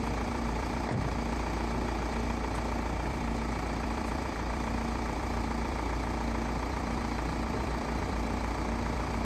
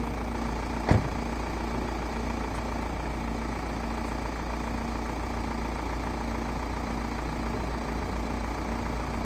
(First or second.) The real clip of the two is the second